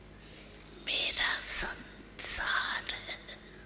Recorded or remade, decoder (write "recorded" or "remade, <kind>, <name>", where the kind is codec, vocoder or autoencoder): recorded